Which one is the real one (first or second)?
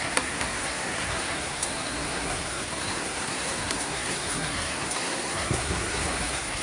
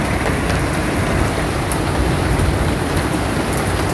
second